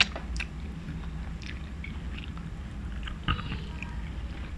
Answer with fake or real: real